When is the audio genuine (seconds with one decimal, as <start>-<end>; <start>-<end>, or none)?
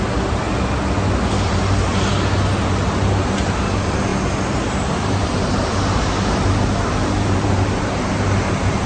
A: 0.0-4.1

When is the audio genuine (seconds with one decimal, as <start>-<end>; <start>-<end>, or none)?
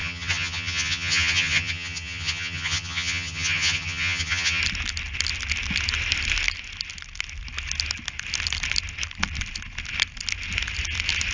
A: 4.6-11.3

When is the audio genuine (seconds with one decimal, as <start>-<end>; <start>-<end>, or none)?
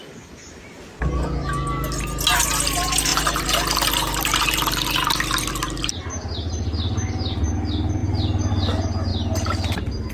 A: 0.0-10.1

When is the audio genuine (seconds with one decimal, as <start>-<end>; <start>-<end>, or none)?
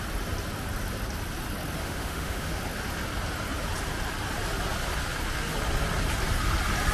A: 0.0-1.8; 2.6-6.9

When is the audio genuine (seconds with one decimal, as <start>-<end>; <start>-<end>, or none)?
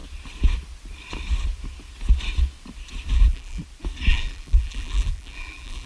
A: 0.0-3.1; 3.6-4.1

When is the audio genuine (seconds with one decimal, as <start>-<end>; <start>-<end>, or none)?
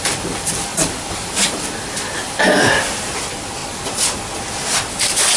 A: 0.0-5.4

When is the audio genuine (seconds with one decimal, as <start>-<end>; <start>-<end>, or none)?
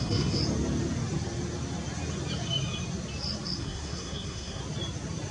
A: 0.4-3.6; 4.6-5.3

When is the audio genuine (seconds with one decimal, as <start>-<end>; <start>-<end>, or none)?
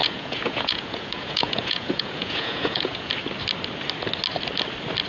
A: 3.1-5.1